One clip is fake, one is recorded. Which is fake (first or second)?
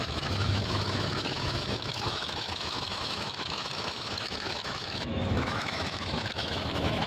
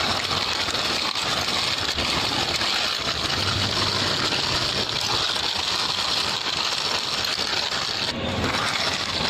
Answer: first